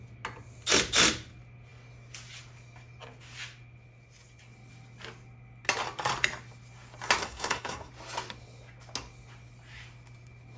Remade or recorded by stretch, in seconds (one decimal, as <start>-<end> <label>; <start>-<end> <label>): 0.0-7.2 recorded; 7.2-7.9 remade; 7.9-10.6 recorded